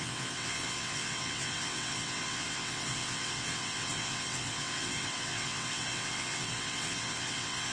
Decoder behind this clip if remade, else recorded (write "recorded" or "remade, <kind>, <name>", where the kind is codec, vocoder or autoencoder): remade, vocoder, WaveNeXt